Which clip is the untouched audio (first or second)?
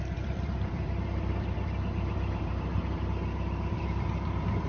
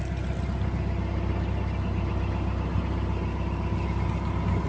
second